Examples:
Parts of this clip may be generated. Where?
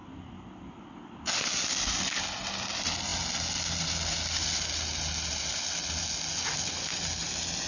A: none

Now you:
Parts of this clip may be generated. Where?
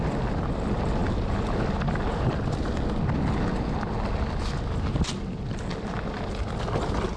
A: none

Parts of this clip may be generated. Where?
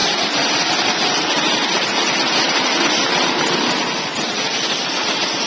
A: none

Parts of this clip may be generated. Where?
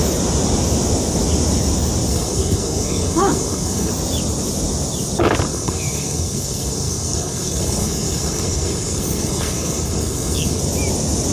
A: 2.1-3.9; 5.5-10.6